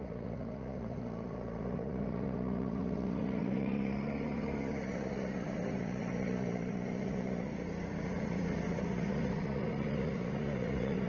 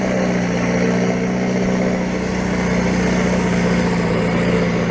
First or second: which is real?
second